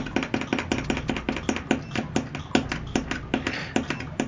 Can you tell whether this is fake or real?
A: real